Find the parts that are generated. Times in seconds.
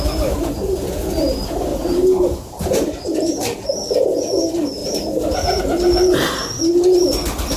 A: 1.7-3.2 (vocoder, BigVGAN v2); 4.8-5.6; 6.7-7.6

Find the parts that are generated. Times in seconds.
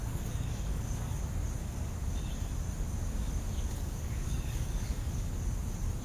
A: 0.0-1.2 (codec, DAC); 1.6-2.2; 3.0-5.4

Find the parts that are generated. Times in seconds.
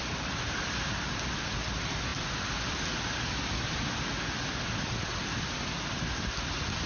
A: none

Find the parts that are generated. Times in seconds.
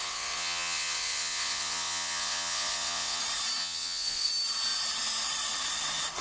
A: 0.0-3.2 (vocoder, WaveNeXt); 3.6-4.3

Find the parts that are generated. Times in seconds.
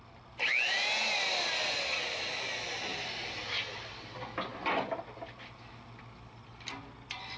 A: none